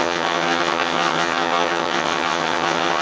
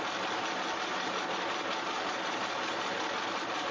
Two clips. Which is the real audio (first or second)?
second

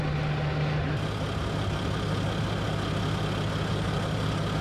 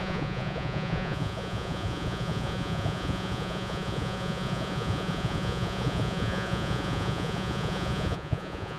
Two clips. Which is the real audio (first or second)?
first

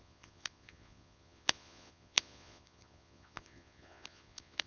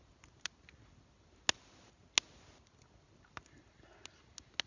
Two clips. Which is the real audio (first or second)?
second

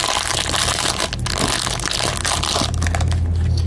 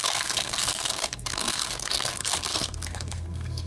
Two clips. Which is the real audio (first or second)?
first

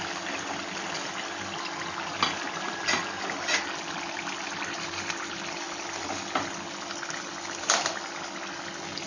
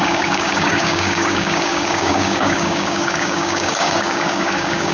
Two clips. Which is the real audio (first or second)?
first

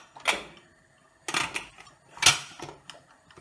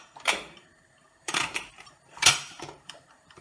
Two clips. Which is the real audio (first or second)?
first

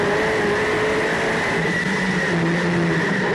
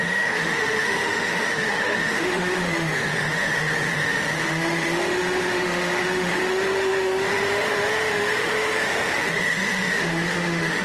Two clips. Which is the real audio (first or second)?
first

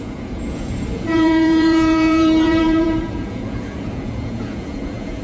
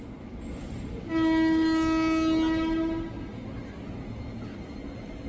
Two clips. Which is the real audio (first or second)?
second